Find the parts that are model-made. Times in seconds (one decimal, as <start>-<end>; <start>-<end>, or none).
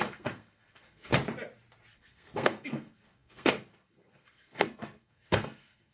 0.0-1.1; 1.9-5.9